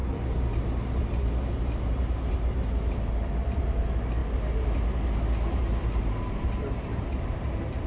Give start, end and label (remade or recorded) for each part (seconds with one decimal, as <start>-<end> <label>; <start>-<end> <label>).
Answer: 0.0-4.2 remade; 4.2-5.6 recorded; 5.6-7.9 remade